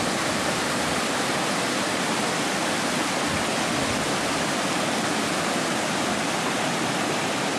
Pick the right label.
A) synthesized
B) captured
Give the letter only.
B